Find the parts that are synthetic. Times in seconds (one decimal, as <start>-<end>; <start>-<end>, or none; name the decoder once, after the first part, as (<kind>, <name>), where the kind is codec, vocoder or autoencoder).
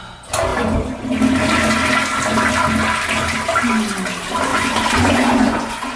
4.5-6.0 (vocoder, Vocos)